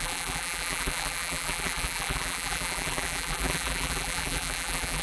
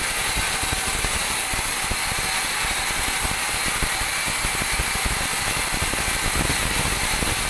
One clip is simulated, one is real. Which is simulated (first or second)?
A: first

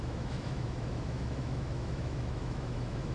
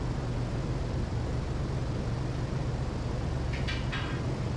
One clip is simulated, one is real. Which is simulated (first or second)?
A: first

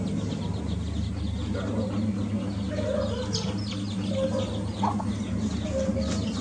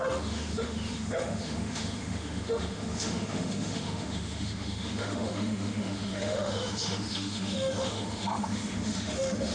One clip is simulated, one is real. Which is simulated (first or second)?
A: second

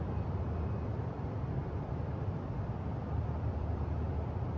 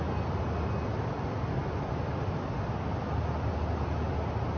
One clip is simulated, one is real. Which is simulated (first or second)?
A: first